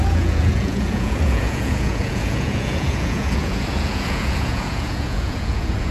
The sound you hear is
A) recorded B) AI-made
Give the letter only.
B